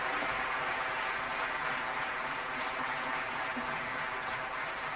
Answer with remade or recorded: recorded